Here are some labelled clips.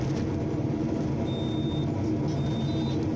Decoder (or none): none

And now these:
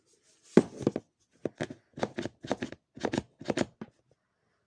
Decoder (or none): none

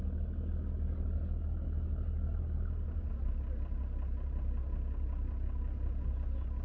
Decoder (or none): none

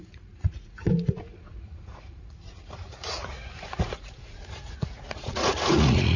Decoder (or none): vocoder, Vocos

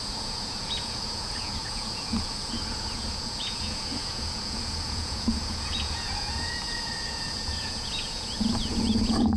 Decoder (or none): vocoder, Vocos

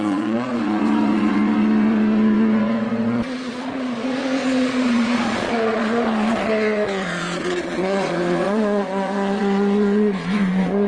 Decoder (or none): vocoder, Vocos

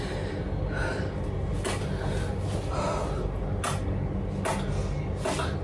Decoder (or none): none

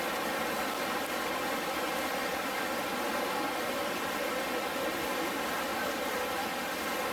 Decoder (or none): none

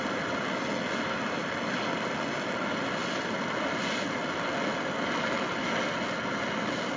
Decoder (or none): none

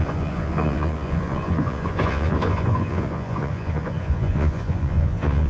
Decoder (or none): vocoder, Vocos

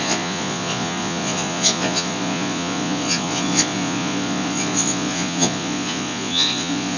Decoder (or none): vocoder, Vocos